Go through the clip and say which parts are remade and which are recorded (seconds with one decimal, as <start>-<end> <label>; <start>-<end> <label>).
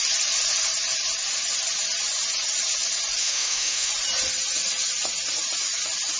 0.0-3.2 recorded; 3.2-3.9 remade; 3.9-6.2 recorded